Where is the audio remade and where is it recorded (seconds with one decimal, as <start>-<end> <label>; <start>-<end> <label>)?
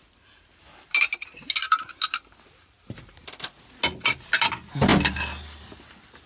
0.0-6.3 recorded